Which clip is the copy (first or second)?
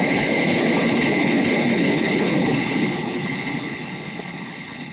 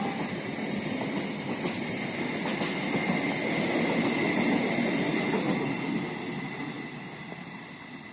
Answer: first